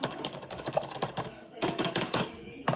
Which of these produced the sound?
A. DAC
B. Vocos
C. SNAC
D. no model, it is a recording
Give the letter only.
A